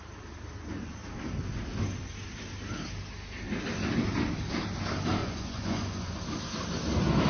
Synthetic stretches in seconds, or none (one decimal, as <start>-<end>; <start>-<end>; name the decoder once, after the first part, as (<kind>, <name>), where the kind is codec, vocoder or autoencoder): 5.2-6.2 (vocoder, Vocos)